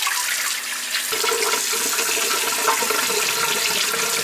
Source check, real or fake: real